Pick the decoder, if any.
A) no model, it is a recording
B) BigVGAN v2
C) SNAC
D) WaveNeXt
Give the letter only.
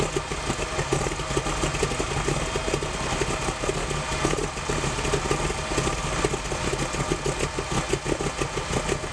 A